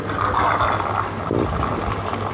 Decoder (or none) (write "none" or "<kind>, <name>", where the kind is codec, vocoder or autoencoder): none